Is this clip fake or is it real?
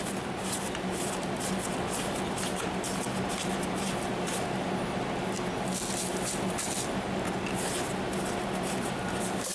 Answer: real